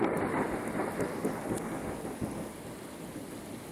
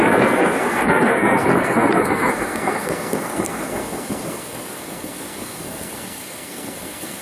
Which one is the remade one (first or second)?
second